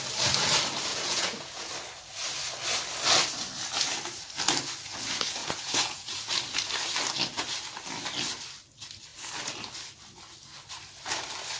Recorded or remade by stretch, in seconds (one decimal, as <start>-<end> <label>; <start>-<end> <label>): 0.0-0.9 recorded; 0.9-1.7 remade; 1.7-5.4 recorded; 5.4-6.3 remade; 6.3-11.6 recorded